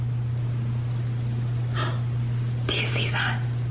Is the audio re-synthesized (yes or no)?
no